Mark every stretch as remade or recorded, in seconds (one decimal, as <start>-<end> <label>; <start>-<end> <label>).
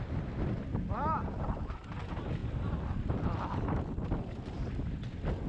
0.0-5.5 recorded